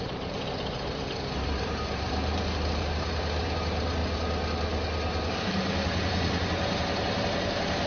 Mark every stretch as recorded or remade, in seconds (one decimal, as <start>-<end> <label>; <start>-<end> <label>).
0.0-4.0 remade; 4.0-5.3 recorded; 5.3-7.9 remade